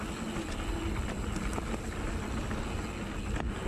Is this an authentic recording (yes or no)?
yes